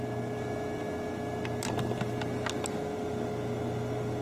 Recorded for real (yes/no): yes